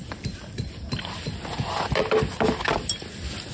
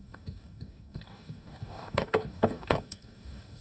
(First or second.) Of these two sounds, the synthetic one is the second